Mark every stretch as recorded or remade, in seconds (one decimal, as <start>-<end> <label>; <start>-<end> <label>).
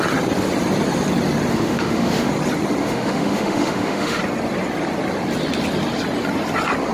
0.0-1.5 recorded; 1.5-2.3 remade; 2.3-2.8 recorded; 2.8-4.2 remade; 4.2-6.9 recorded